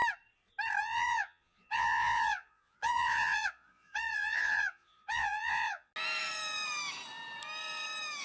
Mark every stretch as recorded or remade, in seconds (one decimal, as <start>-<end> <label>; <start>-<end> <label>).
0.0-0.8 recorded; 0.8-5.9 remade; 5.9-8.2 recorded